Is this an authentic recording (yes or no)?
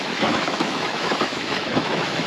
no